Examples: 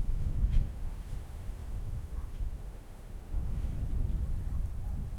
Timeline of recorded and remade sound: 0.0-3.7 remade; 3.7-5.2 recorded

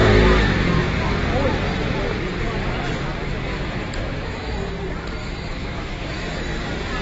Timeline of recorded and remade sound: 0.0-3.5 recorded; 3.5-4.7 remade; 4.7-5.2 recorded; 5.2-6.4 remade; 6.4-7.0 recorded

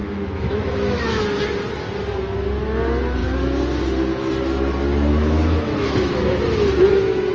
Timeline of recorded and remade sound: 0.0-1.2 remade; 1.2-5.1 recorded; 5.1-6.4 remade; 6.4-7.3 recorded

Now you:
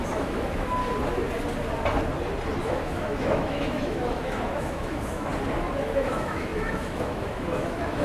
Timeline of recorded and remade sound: 0.0-0.8 remade; 0.8-2.6 recorded; 2.6-5.3 remade; 5.3-5.8 recorded; 5.8-8.0 remade

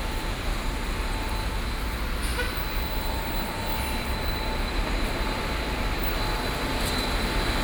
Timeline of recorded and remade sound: 0.0-7.6 recorded